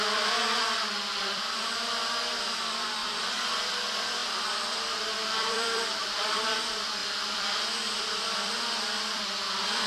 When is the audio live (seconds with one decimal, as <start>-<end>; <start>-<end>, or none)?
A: 0.4-1.2